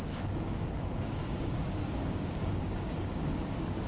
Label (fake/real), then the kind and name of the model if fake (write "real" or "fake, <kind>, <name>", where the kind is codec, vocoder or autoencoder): fake, codec, DAC